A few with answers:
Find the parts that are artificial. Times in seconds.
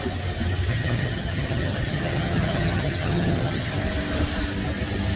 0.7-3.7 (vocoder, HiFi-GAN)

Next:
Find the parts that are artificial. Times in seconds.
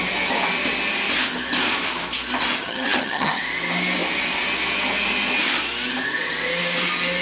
2.5-3.4 (vocoder, HiFi-GAN)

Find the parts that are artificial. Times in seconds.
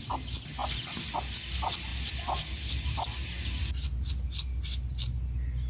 none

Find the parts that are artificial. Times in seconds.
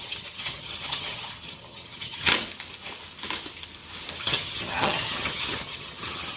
0.0-2.3 (vocoder, HiFi-GAN); 4.2-6.4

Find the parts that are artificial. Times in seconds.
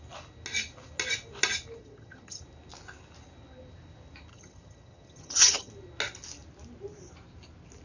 1.8-2.4 (vocoder, HiFi-GAN); 4.3-5.7